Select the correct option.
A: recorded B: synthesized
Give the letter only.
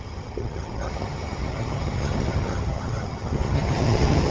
B